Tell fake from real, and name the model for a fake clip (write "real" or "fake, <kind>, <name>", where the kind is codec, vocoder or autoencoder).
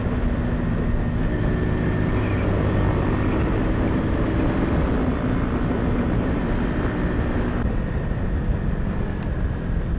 real